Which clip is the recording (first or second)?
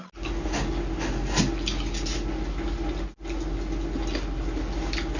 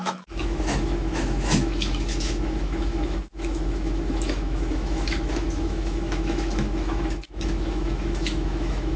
first